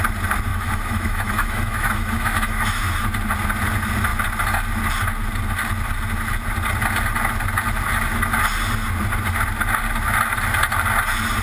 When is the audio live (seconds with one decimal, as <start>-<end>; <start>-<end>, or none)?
0.0-0.5; 2.8-11.4